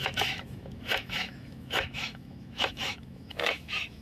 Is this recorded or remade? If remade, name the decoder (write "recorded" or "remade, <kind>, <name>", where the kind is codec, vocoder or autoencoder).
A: remade, autoencoder, DAC-VAE